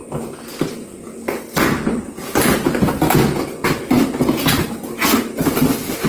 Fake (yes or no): no